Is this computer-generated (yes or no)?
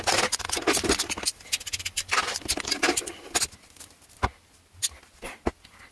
no